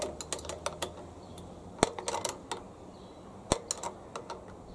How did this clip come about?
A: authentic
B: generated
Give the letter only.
A